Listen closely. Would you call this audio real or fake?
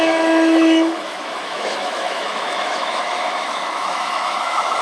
fake